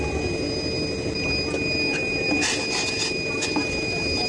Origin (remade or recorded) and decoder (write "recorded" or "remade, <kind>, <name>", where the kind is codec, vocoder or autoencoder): recorded